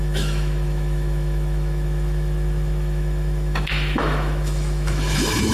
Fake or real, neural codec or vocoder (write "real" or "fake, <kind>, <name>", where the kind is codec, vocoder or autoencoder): fake, autoencoder, DAC-VAE